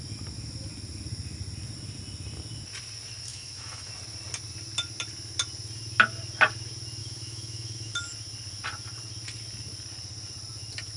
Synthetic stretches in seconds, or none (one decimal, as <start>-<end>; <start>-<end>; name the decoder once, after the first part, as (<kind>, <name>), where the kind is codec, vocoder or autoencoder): 3.3-3.9 (autoencoder, DAC-VAE); 7.0-7.9